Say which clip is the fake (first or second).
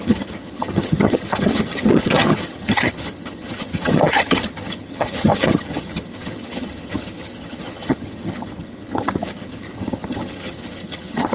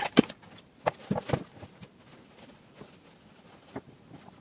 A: first